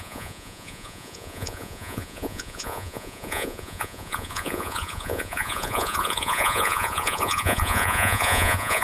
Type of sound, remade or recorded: remade